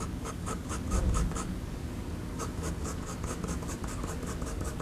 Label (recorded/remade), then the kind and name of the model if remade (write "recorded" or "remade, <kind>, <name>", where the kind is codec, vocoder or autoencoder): remade, codec, DAC